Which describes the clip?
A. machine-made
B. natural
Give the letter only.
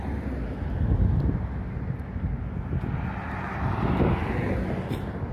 B